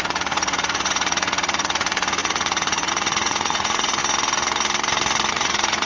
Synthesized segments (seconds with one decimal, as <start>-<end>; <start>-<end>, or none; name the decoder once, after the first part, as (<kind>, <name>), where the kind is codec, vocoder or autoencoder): 0.0-4.0 (vocoder, Vocos); 5.3-5.9